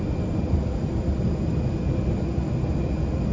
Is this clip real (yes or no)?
yes